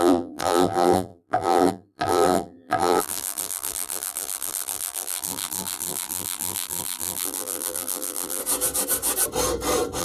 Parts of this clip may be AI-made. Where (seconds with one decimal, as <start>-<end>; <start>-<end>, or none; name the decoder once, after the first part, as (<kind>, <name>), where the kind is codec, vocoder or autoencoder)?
0.0-8.4 (vocoder, BigVGAN v2)